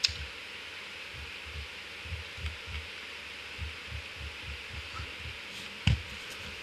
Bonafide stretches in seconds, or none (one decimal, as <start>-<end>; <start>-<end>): 0.0-6.6

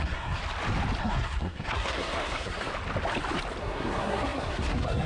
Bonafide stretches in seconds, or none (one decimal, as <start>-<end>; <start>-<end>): 0.4-1.0; 2.7-3.6

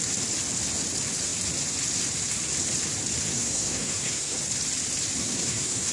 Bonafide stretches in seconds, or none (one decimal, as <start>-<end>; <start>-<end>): 0.0-3.3; 4.4-5.2

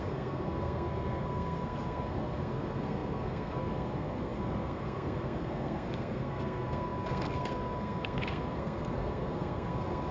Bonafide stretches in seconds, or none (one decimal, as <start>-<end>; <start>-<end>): none

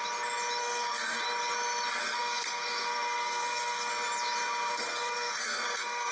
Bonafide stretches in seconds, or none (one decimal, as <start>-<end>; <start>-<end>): 0.0-0.6; 1.2-2.0; 3.9-4.7

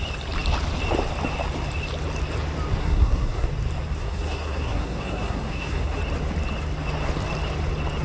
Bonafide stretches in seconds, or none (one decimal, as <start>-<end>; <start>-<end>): 0.0-2.8; 3.5-4.0; 6.0-8.0

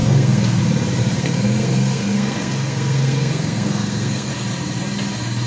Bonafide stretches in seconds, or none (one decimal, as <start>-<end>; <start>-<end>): 0.6-1.0; 4.3-5.5

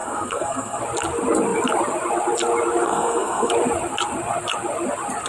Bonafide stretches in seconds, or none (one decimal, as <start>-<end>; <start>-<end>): 0.8-2.9; 3.5-5.3